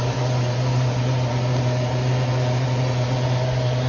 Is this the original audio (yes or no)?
yes